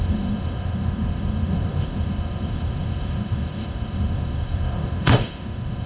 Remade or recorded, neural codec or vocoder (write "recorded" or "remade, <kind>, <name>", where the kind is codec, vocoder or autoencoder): remade, autoencoder, DAC-VAE